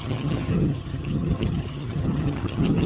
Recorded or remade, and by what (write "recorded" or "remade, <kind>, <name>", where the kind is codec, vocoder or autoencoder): remade, vocoder, HiFi-GAN